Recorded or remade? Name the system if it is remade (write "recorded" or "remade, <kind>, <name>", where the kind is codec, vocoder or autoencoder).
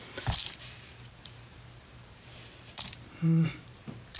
remade, vocoder, BigVGAN v2